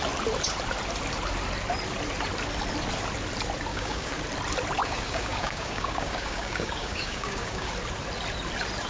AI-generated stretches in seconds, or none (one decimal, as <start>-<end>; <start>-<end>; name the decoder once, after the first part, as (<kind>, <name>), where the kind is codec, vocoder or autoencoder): 3.7-4.2 (codec, DAC); 4.8-7.7